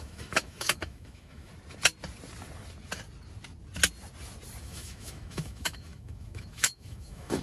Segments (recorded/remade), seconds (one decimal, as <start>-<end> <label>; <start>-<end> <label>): 0.0-1.5 remade; 1.5-4.6 recorded; 4.6-7.4 remade

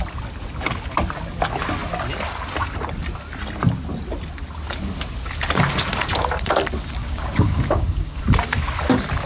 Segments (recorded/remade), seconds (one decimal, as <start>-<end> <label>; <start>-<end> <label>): 0.0-7.0 recorded; 7.0-8.2 remade; 8.2-9.3 recorded

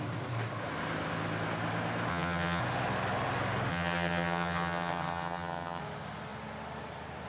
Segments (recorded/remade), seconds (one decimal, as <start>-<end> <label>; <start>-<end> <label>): 0.0-2.1 recorded; 2.1-2.6 remade; 2.6-3.7 recorded; 3.7-5.8 remade; 5.8-7.3 recorded

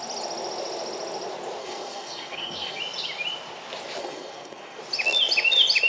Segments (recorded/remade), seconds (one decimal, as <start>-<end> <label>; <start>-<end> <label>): 0.0-1.6 recorded; 1.6-2.8 remade; 2.8-4.0 recorded; 4.0-4.8 remade; 4.8-5.9 recorded

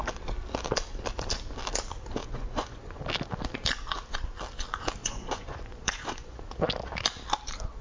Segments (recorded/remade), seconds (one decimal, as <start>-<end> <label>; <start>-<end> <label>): 0.0-2.2 recorded; 2.2-3.0 remade; 3.0-5.0 recorded; 5.0-6.4 remade; 6.4-7.8 recorded